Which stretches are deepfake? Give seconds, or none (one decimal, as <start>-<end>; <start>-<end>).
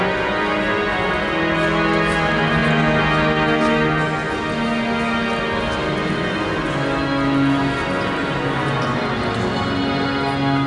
none